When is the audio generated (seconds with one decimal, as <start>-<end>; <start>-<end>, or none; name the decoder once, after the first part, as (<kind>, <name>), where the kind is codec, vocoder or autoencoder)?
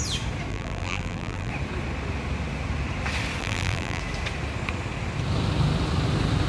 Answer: 0.5-1.5 (vocoder, BigVGAN v2); 3.4-4.0